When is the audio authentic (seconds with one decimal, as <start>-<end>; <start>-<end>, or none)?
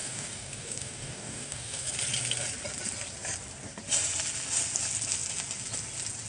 1.9-6.3